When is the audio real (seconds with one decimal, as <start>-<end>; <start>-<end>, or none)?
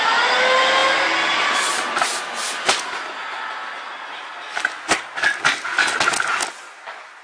0.0-7.2